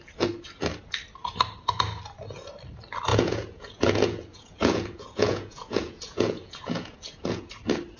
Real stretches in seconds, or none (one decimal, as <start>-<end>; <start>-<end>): 0.0-3.1; 7.5-8.0